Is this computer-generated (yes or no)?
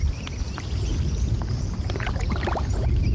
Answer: no